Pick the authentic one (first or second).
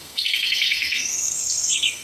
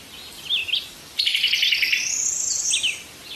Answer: second